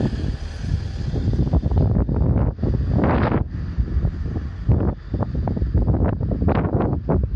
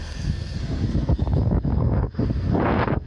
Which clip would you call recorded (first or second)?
first